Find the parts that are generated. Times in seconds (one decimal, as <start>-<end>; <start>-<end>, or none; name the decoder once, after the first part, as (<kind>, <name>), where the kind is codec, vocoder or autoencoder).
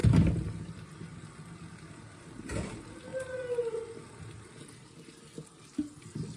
none